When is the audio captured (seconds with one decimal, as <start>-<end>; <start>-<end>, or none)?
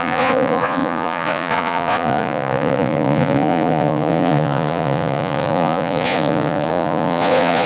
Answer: none